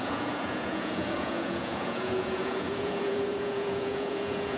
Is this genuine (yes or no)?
no